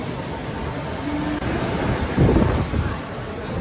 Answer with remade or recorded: recorded